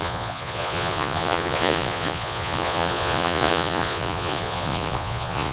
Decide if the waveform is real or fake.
fake